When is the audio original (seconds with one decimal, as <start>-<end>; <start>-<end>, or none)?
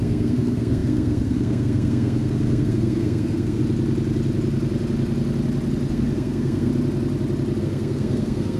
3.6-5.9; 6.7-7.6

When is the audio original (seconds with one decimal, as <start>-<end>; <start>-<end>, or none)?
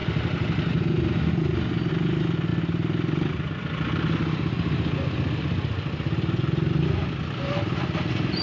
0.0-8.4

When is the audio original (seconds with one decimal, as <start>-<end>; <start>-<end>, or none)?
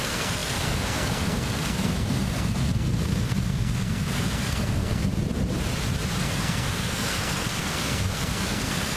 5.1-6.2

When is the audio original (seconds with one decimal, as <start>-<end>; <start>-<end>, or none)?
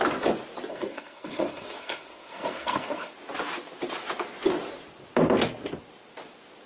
0.0-0.7; 3.1-6.7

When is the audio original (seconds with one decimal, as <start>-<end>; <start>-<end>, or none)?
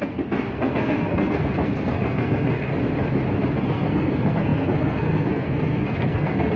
2.7-3.6